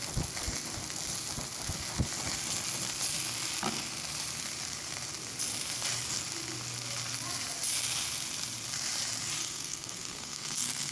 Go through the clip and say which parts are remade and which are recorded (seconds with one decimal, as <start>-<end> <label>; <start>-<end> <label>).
0.0-9.4 recorded; 9.4-10.9 remade